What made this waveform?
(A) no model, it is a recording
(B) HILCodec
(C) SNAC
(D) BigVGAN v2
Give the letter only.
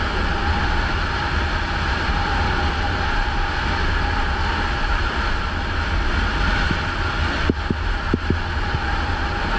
A